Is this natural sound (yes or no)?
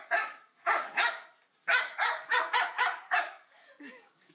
no